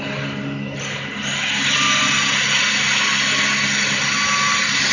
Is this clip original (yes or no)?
yes